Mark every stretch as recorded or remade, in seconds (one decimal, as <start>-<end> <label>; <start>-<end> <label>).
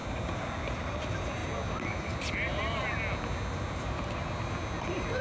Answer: 0.0-5.2 recorded